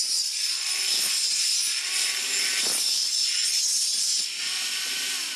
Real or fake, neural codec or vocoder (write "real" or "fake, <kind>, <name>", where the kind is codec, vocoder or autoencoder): real